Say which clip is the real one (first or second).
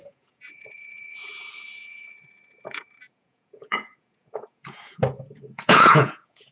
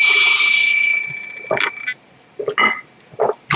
second